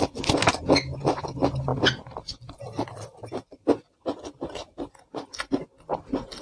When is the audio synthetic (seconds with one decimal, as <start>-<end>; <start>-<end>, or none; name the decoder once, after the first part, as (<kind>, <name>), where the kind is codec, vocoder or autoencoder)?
none